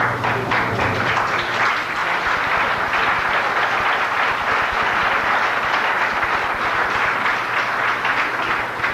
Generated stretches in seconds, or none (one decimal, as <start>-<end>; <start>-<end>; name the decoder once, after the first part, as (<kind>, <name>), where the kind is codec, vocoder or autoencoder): none